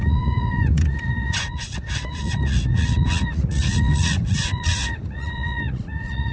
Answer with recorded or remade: remade